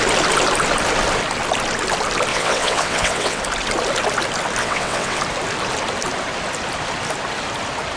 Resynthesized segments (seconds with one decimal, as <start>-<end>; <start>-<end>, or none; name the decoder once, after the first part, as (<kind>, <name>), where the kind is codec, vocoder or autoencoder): 2.3-3.4 (vocoder, WaveNeXt); 4.6-5.2